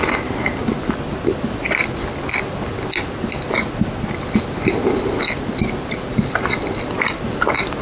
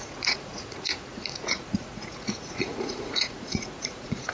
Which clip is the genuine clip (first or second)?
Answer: first